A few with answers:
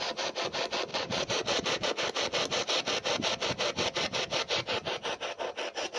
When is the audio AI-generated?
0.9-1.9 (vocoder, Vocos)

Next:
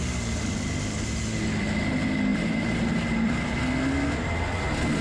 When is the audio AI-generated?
2.3-3.6 (vocoder, BigVGAN v2)

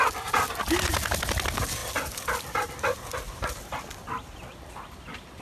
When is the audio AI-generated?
none

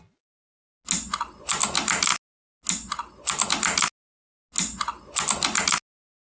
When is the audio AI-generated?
none

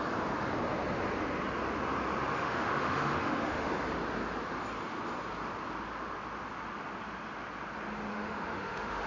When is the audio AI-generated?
2.4-3.7 (autoencoder, DAC-VAE); 8.1-9.1

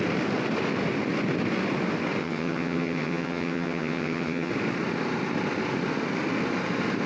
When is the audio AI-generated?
2.2-4.5 (vocoder, HiFi-GAN)

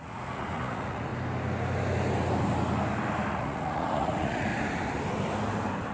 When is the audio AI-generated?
0.0-1.1 (vocoder, Vocos); 3.3-4.5

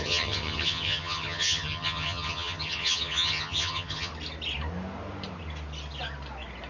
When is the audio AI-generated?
0.0-4.1 (vocoder, HiFi-GAN)